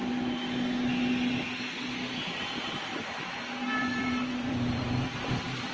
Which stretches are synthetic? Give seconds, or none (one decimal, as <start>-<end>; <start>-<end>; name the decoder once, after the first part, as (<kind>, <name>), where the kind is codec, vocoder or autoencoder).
2.9-5.7 (vocoder, BigVGAN v2)